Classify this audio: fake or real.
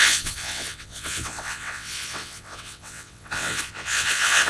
fake